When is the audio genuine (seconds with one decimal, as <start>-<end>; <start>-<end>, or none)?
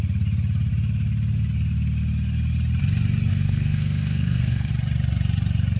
0.0-3.3; 4.7-5.8